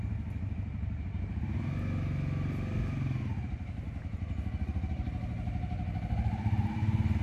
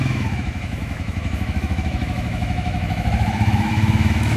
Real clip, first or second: first